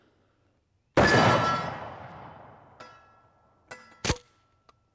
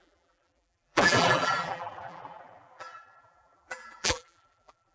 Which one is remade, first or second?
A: second